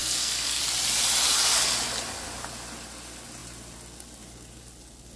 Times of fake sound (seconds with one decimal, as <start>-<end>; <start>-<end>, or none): 0.0-0.6